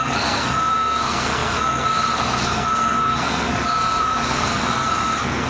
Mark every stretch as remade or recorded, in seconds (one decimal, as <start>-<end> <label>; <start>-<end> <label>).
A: 0.0-5.5 remade